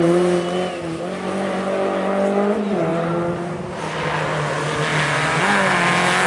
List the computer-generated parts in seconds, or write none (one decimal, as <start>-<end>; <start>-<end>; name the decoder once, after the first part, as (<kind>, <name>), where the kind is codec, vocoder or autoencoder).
2.9-3.6 (vocoder, BigVGAN v2); 4.9-5.8